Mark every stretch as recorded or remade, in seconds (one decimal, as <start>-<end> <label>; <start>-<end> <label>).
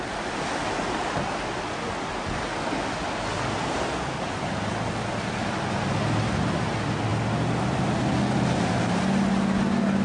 0.0-10.0 recorded